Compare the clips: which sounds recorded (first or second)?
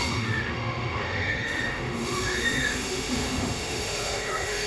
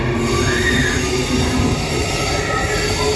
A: second